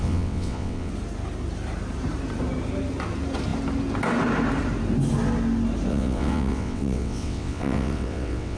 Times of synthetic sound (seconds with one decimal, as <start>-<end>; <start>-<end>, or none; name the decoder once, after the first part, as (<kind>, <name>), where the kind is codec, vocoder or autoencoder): 0.0-0.9 (vocoder, WaveNeXt); 5.9-8.6